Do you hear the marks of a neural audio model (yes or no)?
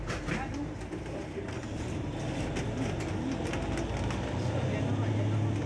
no